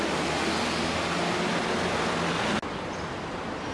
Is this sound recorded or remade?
recorded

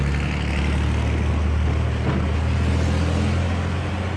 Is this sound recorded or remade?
recorded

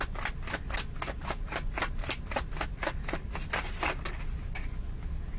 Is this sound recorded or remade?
recorded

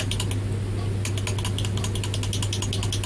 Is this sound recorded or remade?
recorded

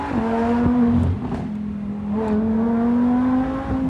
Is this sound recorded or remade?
recorded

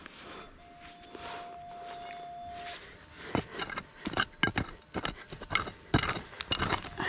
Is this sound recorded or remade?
recorded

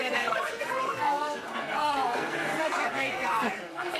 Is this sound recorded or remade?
remade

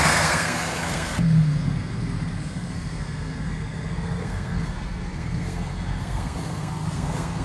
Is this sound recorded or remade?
remade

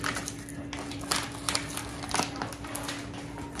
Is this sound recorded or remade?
recorded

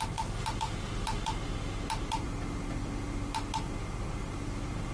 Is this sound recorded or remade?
recorded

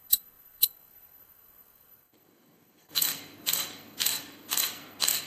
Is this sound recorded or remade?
remade